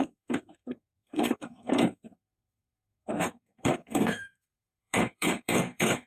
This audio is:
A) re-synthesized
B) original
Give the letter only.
A